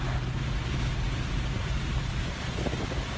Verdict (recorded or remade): recorded